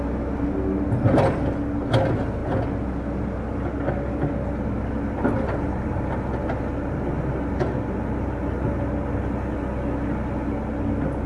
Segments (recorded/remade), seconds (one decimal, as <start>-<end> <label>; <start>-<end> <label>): 0.0-11.3 recorded